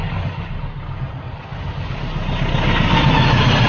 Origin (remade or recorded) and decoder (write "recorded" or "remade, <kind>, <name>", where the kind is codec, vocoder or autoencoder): recorded